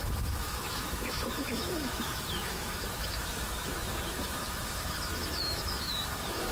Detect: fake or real fake